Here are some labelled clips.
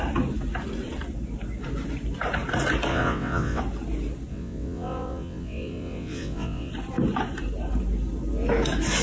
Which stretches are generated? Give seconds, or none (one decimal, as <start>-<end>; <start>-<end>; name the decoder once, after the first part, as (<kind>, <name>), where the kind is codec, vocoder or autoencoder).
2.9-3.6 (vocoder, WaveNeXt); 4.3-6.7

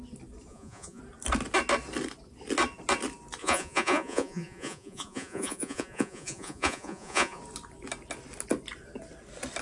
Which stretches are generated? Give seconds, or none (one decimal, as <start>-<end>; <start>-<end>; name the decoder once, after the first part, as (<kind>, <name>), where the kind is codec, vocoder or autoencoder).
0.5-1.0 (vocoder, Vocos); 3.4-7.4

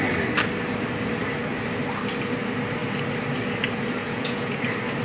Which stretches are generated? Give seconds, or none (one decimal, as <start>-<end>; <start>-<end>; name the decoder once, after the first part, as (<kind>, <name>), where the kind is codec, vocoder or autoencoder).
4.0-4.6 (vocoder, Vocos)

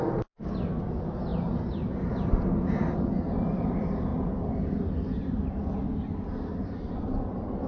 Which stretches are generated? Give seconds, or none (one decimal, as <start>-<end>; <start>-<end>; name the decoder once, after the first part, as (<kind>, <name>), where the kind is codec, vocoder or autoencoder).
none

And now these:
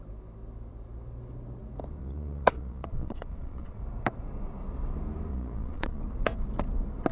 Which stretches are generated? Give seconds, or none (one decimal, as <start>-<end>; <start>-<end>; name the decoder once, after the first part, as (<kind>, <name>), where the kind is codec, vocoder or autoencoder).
2.0-3.8 (vocoder, Vocos); 5.3-6.0

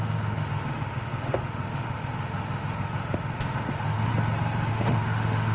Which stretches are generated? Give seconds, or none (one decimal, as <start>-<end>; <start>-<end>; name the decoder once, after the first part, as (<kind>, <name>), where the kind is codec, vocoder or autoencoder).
0.0-4.1 (autoencoder, DAC-VAE); 4.7-5.5

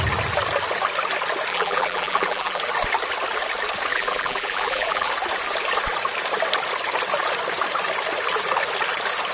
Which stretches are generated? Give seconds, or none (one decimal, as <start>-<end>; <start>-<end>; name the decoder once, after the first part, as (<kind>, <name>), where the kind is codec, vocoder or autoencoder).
1.5-2.6 (vocoder, BigVGAN v2); 3.9-5.1